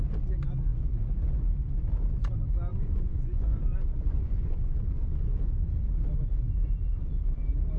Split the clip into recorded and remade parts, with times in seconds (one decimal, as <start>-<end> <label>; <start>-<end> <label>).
0.0-2.7 recorded; 2.7-5.4 remade; 5.4-7.8 recorded